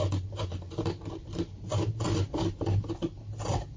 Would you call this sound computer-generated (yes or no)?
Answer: no